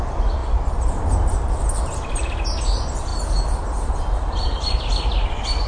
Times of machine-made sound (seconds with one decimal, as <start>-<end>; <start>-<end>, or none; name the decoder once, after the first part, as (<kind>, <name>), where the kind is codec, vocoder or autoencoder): none